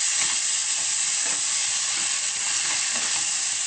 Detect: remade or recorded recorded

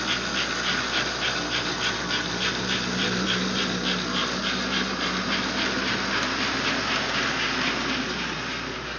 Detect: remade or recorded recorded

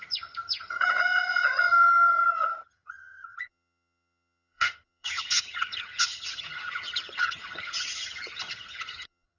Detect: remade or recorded remade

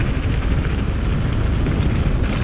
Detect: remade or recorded recorded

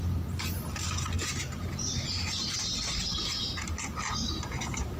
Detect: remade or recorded recorded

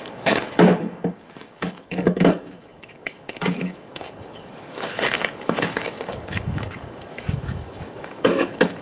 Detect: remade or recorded remade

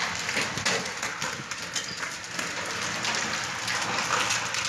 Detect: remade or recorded recorded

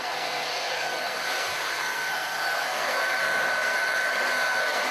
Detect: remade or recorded remade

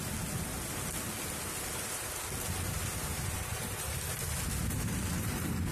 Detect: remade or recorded recorded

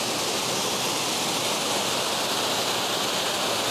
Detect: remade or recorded recorded